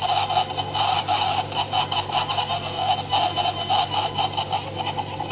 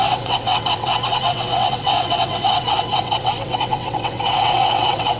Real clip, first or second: first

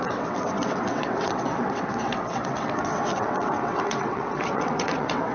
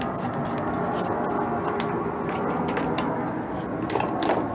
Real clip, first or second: second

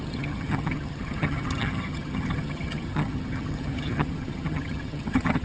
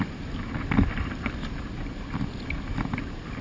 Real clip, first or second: second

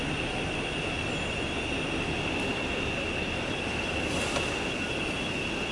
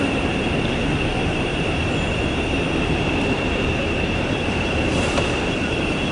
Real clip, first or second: first